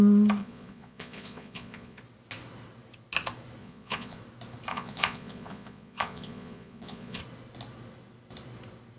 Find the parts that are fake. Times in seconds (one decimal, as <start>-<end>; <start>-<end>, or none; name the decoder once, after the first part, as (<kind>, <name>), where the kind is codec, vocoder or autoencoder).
0.4-2.0 (vocoder, Vocos); 3.6-4.2; 4.7-7.2